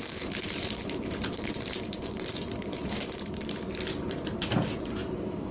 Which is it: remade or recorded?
remade